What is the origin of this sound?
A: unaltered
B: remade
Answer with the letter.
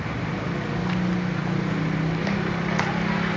A